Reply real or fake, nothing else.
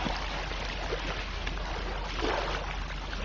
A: real